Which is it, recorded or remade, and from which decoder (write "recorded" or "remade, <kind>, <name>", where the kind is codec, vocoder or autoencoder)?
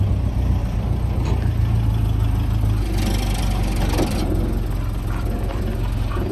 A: recorded